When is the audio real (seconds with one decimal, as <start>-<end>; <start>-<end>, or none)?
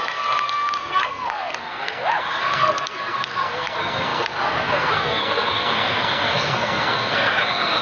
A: none